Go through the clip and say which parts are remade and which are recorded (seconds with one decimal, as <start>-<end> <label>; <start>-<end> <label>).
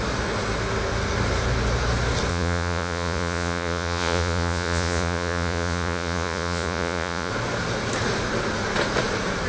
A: 0.0-2.3 recorded; 2.3-7.3 remade; 7.3-9.5 recorded